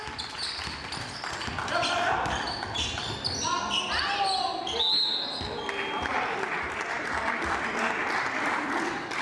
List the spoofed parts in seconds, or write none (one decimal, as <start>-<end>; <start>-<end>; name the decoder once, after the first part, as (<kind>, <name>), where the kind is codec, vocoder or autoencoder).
none